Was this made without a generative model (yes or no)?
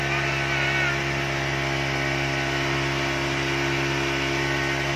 yes